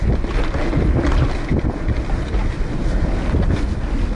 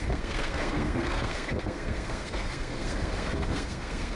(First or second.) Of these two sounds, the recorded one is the first